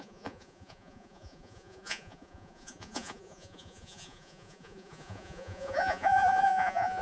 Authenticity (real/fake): fake